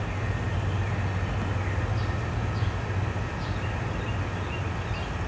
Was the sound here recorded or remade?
recorded